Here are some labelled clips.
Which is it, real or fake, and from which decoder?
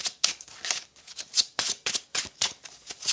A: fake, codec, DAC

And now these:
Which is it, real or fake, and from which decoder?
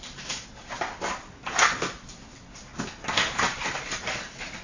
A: real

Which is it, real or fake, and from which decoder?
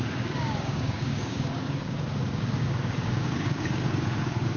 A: fake, codec, DAC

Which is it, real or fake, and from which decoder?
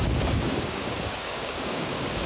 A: fake, codec, DAC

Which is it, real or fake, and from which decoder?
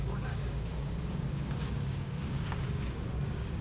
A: fake, codec, DAC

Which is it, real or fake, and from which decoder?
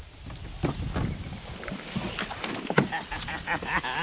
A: real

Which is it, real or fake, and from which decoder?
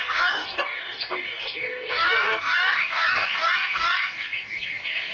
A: fake, codec, DAC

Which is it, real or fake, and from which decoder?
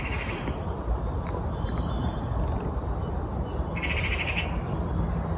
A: real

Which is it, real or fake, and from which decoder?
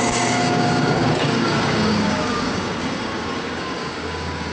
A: fake, codec, DAC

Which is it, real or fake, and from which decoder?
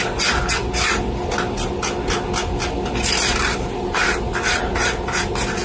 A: real